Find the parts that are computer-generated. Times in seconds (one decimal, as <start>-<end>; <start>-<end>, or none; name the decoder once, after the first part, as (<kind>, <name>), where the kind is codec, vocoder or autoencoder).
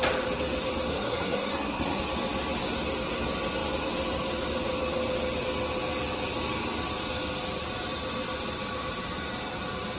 0.9-2.0 (codec, SNAC)